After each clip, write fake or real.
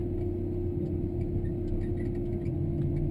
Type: real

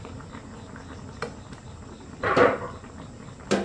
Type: real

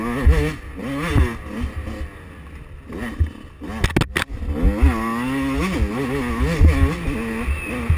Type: real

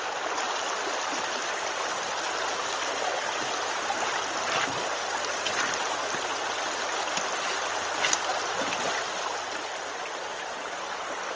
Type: real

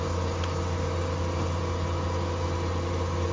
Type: real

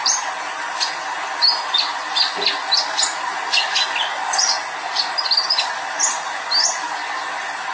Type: real